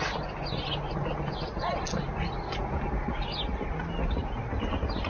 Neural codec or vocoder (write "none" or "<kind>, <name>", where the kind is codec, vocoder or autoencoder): none